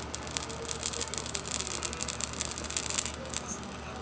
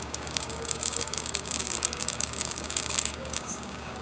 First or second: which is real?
first